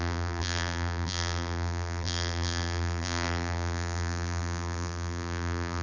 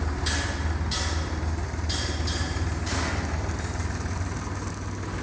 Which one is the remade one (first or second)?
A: first